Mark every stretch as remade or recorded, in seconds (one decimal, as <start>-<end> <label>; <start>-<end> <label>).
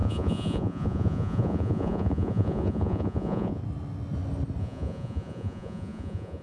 0.0-3.6 remade; 3.6-4.6 recorded; 4.6-6.4 remade